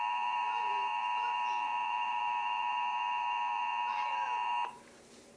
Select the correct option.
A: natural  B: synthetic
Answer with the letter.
B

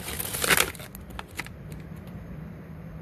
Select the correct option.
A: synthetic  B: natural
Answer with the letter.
A